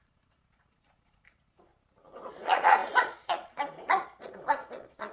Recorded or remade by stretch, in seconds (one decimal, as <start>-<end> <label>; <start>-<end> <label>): 0.0-1.7 remade; 1.7-2.3 recorded; 2.3-5.1 remade